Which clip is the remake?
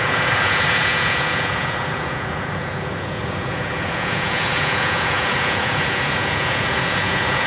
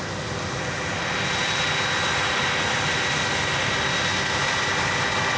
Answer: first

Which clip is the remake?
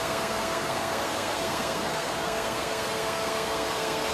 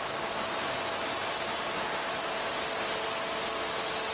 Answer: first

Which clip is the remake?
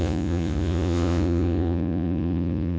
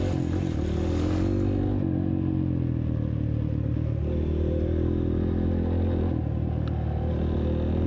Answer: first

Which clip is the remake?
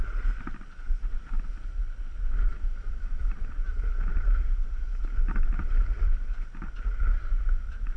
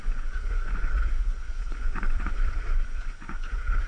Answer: second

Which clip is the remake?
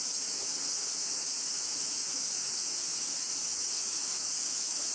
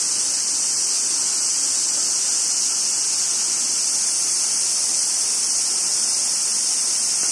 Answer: first